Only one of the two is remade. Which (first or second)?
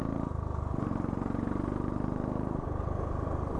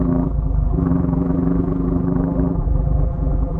second